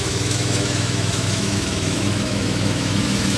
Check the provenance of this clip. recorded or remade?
remade